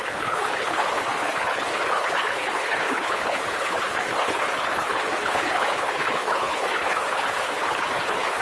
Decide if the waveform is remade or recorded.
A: remade